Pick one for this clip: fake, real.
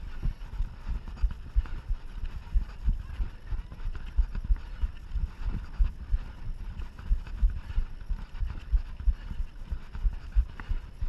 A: real